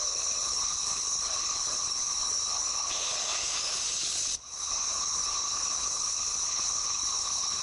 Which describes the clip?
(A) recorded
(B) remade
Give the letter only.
B